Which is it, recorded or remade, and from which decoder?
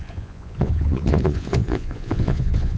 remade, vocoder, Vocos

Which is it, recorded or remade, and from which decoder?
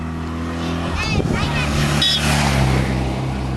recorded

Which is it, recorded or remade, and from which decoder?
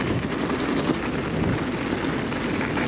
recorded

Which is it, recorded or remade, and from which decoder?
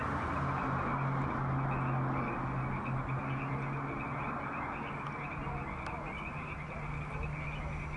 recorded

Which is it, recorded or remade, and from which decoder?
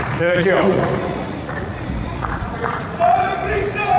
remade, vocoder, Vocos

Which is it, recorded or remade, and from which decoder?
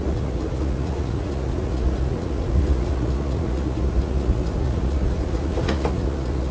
remade, vocoder, Vocos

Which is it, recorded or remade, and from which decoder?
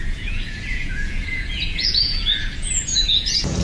remade, vocoder, Vocos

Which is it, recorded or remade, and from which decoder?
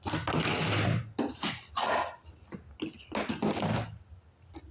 recorded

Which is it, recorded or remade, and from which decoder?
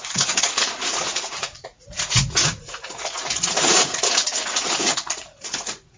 remade, vocoder, Vocos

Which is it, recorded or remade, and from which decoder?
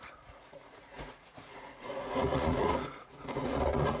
remade, vocoder, Vocos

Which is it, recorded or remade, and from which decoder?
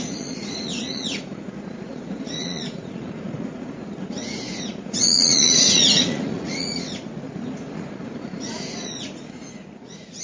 remade, vocoder, Vocos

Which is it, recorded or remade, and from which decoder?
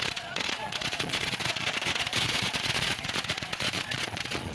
remade, vocoder, Vocos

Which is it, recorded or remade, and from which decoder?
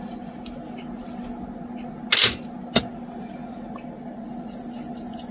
recorded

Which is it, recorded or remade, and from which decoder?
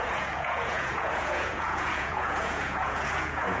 remade, vocoder, Vocos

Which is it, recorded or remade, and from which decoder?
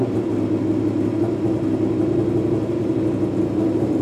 recorded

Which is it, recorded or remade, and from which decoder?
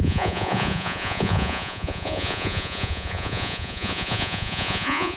remade, vocoder, Vocos